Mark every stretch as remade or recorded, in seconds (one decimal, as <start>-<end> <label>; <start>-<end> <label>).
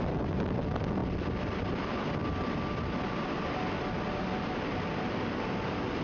0.0-6.0 recorded